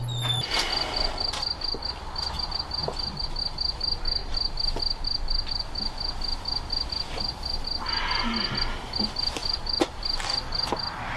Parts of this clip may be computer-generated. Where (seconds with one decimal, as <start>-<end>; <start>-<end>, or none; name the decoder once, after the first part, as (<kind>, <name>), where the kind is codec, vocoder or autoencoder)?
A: 9.4-10.0 (vocoder, BigVGAN v2)